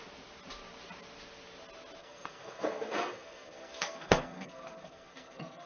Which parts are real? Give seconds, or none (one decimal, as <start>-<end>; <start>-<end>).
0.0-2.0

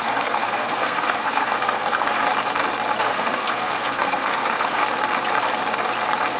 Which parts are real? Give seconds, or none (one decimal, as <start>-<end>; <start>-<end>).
2.2-3.0; 4.8-6.4

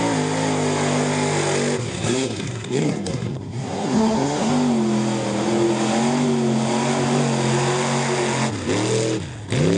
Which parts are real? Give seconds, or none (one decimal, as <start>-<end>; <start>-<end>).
0.0-1.8; 4.5-9.8